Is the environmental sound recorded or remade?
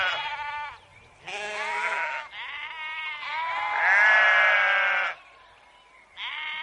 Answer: recorded